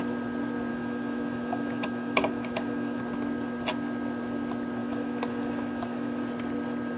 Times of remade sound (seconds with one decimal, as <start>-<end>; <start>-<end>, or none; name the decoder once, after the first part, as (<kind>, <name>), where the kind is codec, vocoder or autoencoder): 0.7-3.0 (autoencoder, DAC-VAE); 4.8-6.2